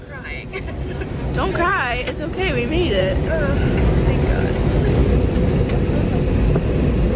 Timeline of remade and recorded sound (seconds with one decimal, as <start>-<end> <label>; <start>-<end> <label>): 0.0-0.5 recorded; 0.5-1.2 remade; 1.2-1.7 recorded; 1.7-3.3 remade; 3.3-7.2 recorded